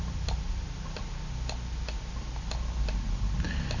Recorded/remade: recorded